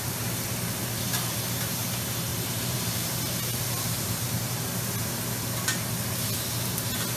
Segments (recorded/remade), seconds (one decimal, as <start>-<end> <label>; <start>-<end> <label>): 0.0-2.3 recorded; 2.3-4.7 remade; 4.7-7.2 recorded